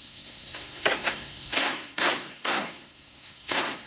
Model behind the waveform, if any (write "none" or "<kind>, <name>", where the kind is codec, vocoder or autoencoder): codec, SNAC